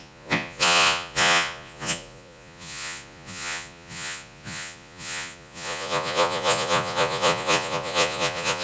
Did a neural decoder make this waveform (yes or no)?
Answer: yes